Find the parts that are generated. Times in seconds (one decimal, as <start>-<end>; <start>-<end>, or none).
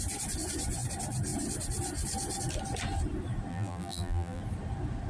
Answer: 3.5-4.4